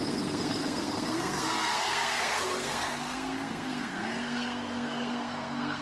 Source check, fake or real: fake